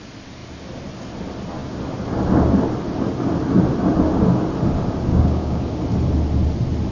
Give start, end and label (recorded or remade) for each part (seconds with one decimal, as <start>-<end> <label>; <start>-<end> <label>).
0.0-5.1 recorded; 5.1-5.6 remade; 5.6-6.9 recorded